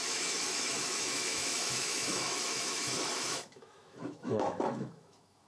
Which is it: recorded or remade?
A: remade